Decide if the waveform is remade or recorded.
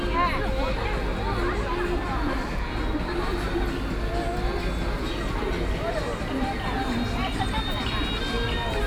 recorded